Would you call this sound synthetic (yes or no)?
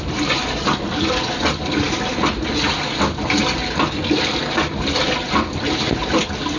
no